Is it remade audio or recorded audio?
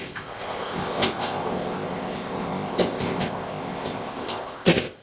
remade